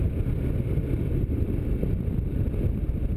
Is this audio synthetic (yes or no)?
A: yes